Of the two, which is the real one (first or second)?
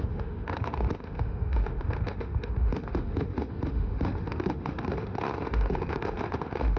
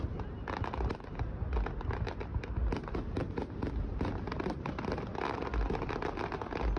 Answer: second